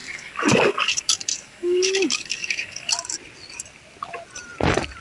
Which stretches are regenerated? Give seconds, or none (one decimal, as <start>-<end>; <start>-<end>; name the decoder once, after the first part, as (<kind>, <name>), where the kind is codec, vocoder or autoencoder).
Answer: 0.0-2.9 (codec, DAC)